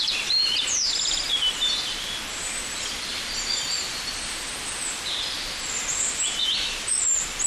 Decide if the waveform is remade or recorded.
recorded